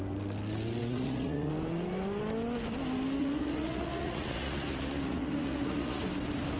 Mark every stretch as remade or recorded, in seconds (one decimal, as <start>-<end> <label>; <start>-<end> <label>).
0.0-0.8 recorded; 0.8-1.5 remade; 1.5-3.2 recorded; 3.2-6.0 remade; 6.0-6.6 recorded